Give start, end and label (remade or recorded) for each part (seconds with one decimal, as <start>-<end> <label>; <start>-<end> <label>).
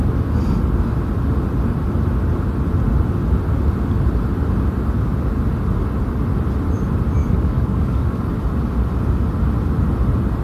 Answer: 0.0-7.2 recorded; 7.2-8.3 remade; 8.3-10.4 recorded